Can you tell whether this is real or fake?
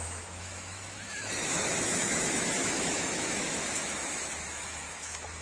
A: fake